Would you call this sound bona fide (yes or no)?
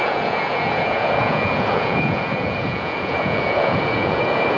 no